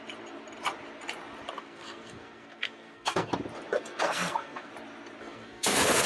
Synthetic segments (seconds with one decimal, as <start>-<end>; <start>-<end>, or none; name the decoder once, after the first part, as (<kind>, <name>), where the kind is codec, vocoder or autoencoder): 1.6-3.3 (codec, SNAC); 3.7-4.7; 5.2-6.1